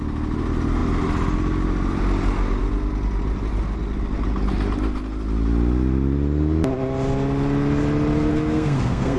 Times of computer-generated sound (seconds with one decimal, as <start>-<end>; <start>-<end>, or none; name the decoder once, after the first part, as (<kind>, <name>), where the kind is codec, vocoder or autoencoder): 8.3-9.2 (codec, SNAC)